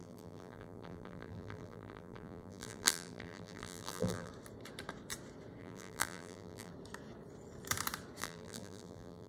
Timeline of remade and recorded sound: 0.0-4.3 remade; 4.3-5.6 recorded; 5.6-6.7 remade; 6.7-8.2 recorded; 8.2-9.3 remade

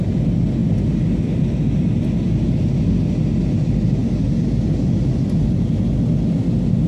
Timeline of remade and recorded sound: 0.0-6.9 recorded